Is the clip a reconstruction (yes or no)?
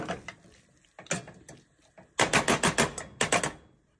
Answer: no